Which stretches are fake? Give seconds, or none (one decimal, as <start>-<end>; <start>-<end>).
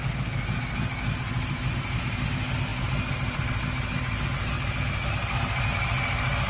none